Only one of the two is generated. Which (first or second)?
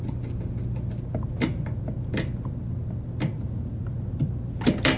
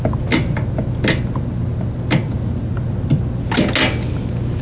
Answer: first